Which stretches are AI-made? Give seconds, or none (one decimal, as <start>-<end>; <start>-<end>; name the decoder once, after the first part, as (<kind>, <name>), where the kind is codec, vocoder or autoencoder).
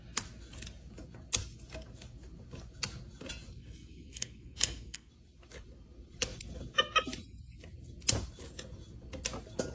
3.6-5.1 (codec, SNAC)